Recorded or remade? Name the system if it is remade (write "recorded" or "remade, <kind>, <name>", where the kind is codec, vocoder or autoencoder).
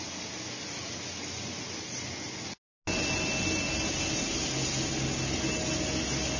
recorded